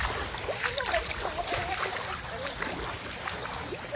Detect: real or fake real